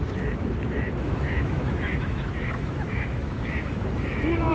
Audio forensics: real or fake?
fake